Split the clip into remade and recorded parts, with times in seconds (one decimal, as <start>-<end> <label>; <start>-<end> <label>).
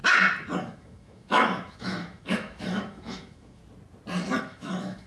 0.0-0.6 recorded; 0.6-3.6 remade; 3.6-4.4 recorded; 4.4-5.1 remade